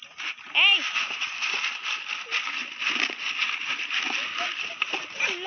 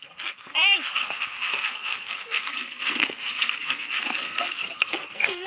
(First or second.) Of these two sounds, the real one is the first